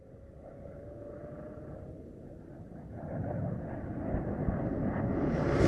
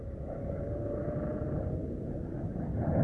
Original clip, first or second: second